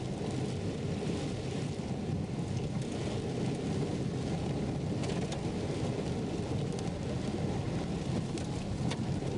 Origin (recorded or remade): recorded